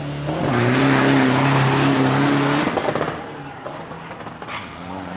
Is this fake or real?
real